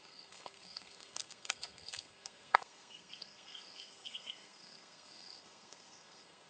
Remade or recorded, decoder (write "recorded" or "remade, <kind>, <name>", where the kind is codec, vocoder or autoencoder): remade, codec, SNAC